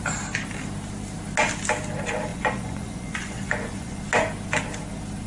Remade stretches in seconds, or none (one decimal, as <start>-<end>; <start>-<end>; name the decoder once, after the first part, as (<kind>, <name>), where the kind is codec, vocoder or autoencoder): 2.3-4.0 (vocoder, Vocos)